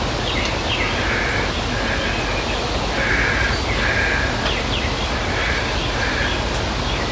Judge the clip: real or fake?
real